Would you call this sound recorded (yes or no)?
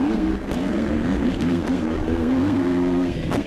no